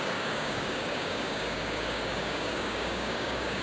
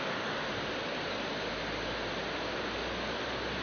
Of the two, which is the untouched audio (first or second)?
second